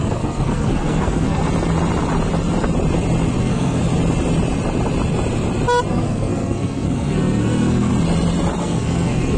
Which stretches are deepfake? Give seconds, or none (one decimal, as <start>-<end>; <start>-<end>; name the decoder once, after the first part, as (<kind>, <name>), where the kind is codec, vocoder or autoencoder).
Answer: 0.0-1.4 (codec, SNAC); 3.4-3.8; 5.9-7.9; 8.6-9.4